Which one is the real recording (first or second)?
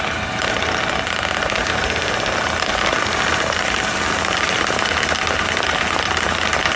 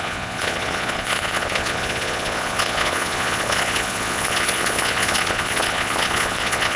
first